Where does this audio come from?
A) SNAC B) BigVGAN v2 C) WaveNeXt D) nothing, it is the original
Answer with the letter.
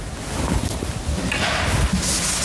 D